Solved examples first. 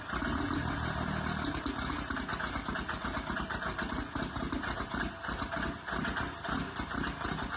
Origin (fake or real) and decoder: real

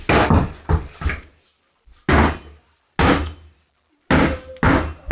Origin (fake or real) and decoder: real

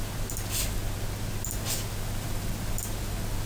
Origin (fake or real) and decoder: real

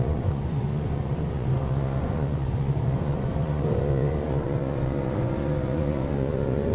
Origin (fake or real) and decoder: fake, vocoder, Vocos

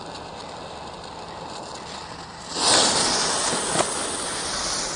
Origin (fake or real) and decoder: real